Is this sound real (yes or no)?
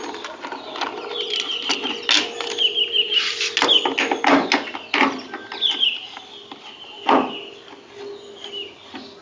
yes